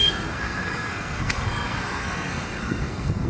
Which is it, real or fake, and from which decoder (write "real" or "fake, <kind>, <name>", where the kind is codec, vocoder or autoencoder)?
fake, codec, SNAC